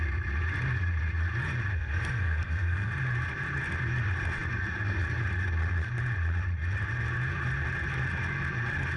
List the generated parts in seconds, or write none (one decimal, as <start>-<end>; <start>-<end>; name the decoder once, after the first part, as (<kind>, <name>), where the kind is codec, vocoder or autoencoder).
1.7-2.9 (codec, SNAC)